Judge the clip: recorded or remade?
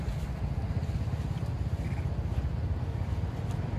recorded